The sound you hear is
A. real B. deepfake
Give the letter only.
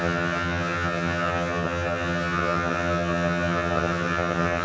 B